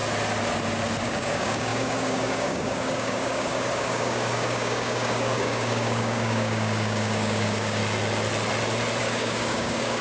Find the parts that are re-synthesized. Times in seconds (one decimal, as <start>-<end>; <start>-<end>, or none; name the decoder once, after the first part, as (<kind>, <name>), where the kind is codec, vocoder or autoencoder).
1.0-7.8 (codec, DAC); 9.0-10.0